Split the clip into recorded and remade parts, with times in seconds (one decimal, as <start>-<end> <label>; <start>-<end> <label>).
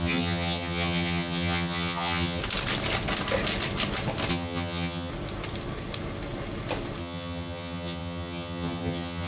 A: 0.0-2.4 remade; 2.4-4.3 recorded; 4.3-5.1 remade; 5.1-7.0 recorded; 7.0-9.3 remade